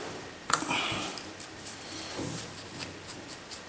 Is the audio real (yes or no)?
yes